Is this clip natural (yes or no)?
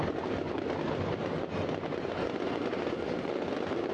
yes